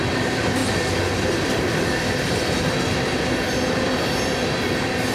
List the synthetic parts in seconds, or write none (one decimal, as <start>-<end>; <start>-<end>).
0.0-0.6; 3.7-5.1